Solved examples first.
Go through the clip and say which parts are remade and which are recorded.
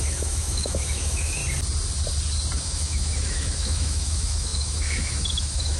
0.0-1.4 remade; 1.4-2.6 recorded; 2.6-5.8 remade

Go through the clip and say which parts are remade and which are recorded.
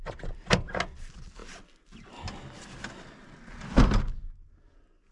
0.0-5.1 recorded